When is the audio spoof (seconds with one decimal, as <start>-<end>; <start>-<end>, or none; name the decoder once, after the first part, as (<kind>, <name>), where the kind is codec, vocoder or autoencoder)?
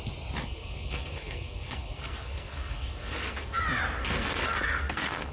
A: 0.4-3.6 (codec, SNAC); 4.0-5.3